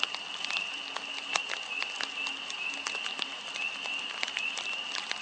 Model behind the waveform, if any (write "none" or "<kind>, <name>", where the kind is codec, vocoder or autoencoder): none